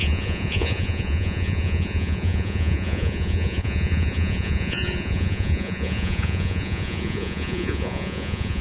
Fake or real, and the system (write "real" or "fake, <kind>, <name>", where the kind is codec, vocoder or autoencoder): fake, vocoder, Vocos